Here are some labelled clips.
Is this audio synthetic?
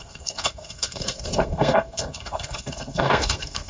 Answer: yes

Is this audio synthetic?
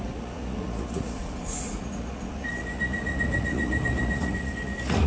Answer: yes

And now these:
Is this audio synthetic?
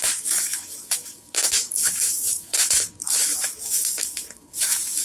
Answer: yes